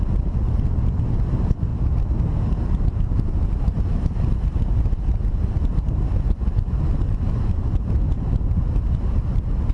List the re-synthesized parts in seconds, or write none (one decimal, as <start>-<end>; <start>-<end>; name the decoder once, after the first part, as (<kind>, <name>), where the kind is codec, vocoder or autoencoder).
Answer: none

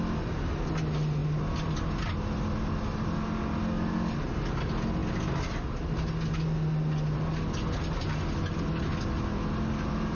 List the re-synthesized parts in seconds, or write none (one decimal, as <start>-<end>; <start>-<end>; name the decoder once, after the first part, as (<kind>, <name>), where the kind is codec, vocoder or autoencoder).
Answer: none